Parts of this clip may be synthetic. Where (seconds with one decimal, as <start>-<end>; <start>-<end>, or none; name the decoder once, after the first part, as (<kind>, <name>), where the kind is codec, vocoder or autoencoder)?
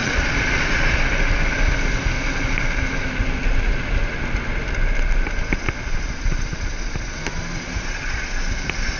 0.0-1.0 (vocoder, Vocos)